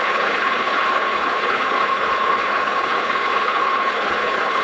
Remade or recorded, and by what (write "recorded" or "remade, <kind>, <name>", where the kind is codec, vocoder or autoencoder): remade, codec, HILCodec